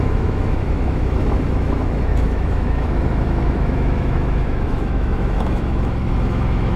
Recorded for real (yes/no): no